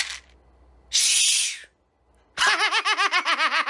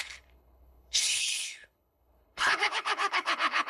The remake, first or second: second